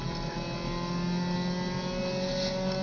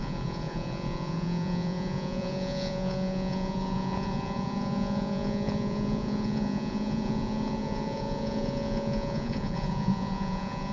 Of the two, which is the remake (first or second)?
second